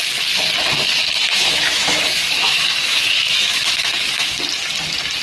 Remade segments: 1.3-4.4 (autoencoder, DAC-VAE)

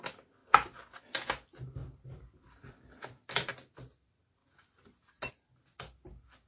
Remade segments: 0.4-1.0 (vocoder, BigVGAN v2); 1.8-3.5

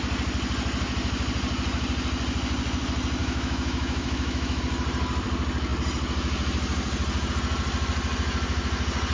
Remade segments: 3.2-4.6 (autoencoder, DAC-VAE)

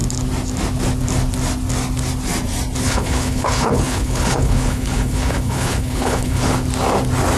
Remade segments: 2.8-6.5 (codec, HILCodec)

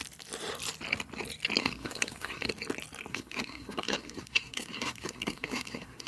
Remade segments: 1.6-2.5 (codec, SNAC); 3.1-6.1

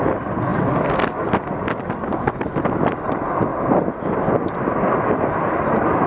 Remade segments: none

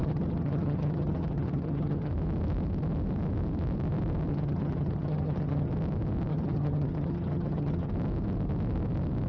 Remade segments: 0.0-2.1 (vocoder, HiFi-GAN); 4.3-5.7; 6.3-7.9

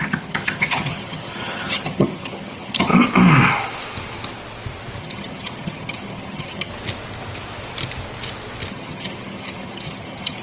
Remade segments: 0.0-2.9 (vocoder, HiFi-GAN); 5.0-6.7; 8.7-10.4